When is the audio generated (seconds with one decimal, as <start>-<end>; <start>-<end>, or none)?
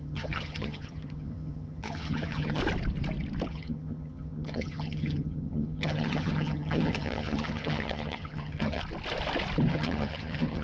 0.0-2.6; 3.5-8.8; 9.7-10.6